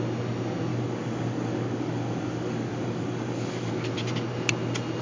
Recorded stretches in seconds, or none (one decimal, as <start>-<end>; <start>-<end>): 0.0-0.7; 3.7-5.0

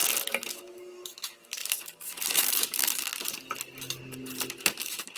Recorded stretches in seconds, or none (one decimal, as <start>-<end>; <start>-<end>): 0.0-0.5; 3.1-4.6